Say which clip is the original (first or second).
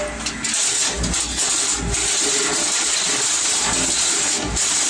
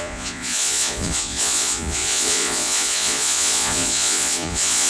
first